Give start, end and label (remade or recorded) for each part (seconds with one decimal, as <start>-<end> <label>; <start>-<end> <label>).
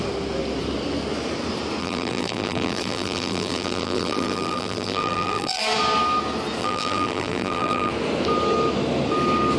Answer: 0.0-1.8 recorded; 1.8-5.6 remade; 5.6-6.6 recorded; 6.6-7.9 remade; 7.9-9.6 recorded